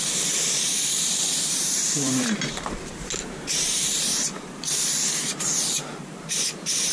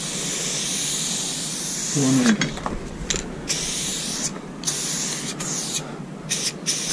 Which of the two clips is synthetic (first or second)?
first